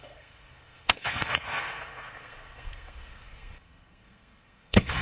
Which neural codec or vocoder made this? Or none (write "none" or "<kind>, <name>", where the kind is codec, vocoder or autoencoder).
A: codec, SNAC